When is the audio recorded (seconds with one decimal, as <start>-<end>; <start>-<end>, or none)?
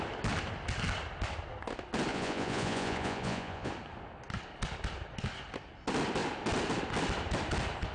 0.0-2.1; 3.7-7.9